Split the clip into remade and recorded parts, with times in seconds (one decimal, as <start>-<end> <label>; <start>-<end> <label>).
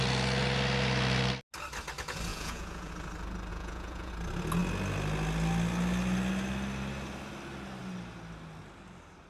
0.0-2.3 recorded; 2.3-2.9 remade; 2.9-3.5 recorded; 3.5-4.1 remade; 4.1-9.3 recorded